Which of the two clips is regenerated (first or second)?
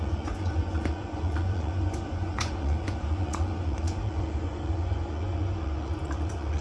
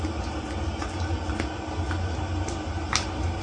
first